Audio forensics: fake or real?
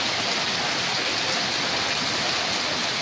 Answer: real